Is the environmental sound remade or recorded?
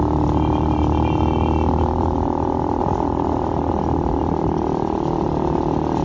recorded